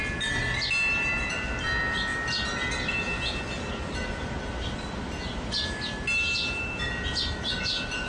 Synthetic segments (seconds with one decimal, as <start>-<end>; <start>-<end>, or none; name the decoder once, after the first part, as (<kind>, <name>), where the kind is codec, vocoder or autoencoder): none